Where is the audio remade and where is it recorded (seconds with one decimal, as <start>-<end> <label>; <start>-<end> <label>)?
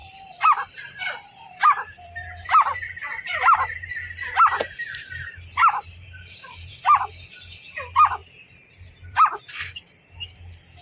0.0-3.9 remade; 3.9-5.6 recorded; 5.6-7.0 remade; 7.0-8.2 recorded; 8.2-9.9 remade; 9.9-10.8 recorded